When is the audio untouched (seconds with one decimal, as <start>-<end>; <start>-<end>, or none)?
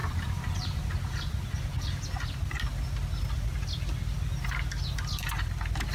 0.8-5.9